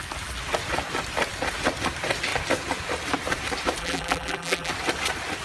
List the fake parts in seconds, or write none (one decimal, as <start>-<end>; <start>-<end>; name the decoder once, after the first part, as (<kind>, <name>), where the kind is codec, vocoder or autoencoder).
3.8-4.7 (vocoder, BigVGAN v2)